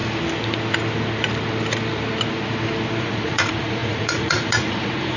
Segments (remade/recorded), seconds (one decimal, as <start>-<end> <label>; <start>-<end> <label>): 0.0-3.0 recorded; 3.0-5.2 remade